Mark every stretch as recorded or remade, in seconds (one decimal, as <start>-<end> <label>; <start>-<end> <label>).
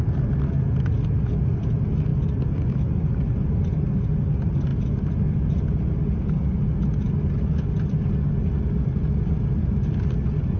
0.0-10.6 recorded